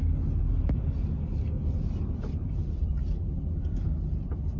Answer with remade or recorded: recorded